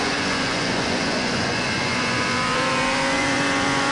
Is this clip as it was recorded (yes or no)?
no